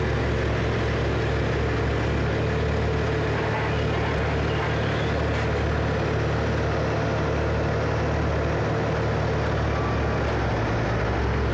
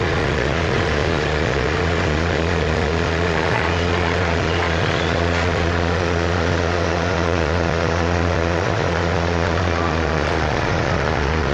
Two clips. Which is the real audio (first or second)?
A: first